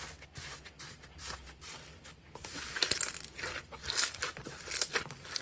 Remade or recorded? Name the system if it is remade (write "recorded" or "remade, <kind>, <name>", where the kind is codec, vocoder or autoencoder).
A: recorded